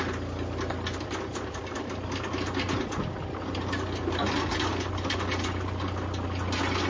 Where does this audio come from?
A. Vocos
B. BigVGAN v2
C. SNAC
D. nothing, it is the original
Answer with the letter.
D